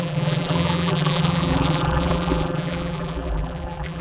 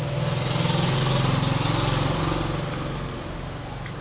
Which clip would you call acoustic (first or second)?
second